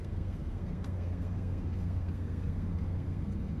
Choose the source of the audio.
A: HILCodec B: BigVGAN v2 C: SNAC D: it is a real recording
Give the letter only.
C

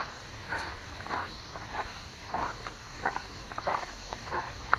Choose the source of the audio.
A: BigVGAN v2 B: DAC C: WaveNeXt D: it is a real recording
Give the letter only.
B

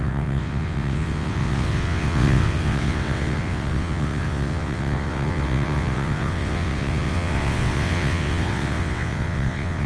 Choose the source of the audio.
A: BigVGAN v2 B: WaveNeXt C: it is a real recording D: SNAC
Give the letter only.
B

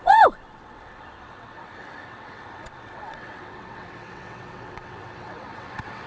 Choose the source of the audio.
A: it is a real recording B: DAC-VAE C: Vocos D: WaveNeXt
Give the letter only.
D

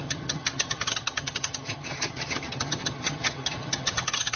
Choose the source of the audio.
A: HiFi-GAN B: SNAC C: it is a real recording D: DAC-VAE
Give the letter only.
A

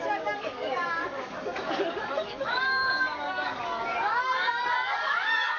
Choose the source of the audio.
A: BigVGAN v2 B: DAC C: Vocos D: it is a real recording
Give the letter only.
B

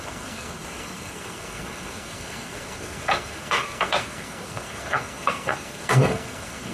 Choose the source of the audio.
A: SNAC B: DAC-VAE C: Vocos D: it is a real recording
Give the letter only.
A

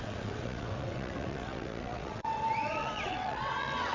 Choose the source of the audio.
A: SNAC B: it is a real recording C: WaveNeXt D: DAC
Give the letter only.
C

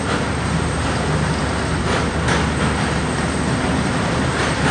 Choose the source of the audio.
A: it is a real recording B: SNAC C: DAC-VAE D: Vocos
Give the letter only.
A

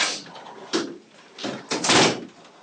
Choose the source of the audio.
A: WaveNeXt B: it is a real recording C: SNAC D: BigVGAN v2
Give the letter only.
B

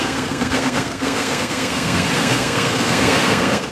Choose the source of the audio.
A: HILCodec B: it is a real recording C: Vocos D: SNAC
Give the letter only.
D